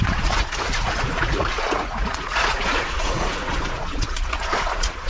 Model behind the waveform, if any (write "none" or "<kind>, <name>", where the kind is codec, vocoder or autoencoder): vocoder, Vocos